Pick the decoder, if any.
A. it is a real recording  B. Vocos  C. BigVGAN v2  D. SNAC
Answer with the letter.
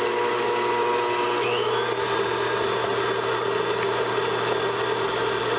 A